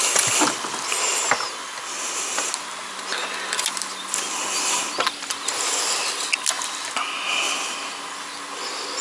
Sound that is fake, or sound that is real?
real